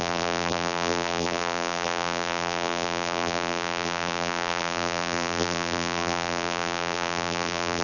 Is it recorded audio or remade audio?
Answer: remade